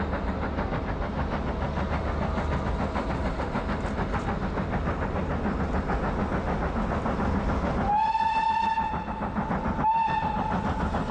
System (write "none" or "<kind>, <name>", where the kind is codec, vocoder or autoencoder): none